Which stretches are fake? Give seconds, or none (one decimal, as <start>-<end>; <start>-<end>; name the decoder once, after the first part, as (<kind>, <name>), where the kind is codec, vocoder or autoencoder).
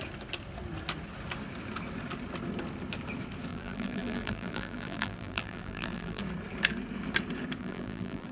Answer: 3.5-6.2 (vocoder, BigVGAN v2); 7.6-8.3